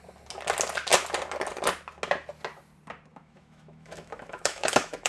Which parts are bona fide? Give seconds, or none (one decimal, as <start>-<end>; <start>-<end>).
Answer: 0.0-3.1